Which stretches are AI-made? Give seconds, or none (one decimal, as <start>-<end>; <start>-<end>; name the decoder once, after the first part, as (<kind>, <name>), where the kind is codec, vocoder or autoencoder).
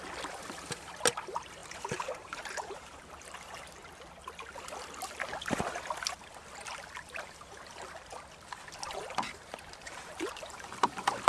1.6-3.1 (vocoder, BigVGAN v2)